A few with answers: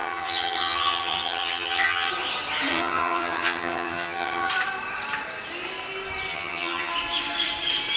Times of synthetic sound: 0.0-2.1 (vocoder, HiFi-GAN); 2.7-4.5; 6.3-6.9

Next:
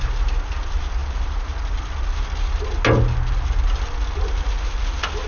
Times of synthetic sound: none

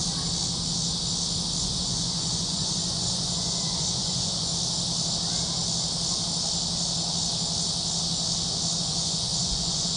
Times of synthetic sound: 1.6-4.5 (vocoder, Vocos); 8.8-10.0

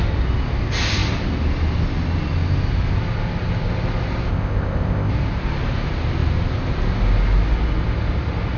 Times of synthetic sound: 4.3-5.1 (codec, ZipCodec)

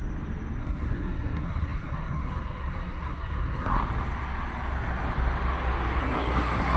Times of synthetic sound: 0.6-3.8 (codec, SNAC); 6.0-6.8

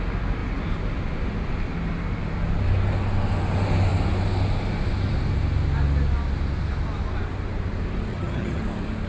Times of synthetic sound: 8.1-8.6 (vocoder, HiFi-GAN)

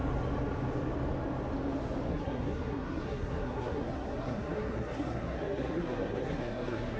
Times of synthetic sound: 2.1-7.0 (codec, SNAC)